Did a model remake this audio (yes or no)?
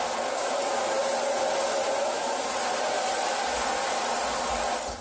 no